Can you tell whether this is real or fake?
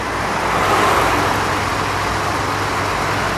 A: real